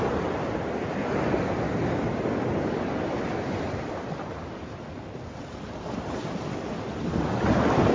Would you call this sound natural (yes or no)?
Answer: yes